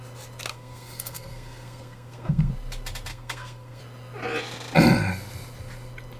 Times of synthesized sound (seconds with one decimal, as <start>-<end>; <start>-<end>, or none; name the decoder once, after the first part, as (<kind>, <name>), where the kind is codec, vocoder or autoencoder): 0.5-2.5 (codec, SNAC); 3.1-3.8